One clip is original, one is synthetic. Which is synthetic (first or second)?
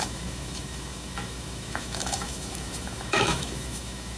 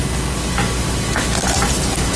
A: first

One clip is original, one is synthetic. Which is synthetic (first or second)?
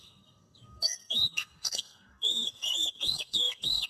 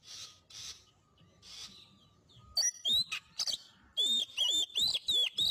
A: first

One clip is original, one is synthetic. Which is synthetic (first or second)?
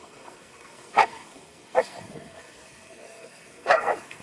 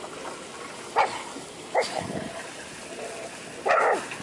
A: first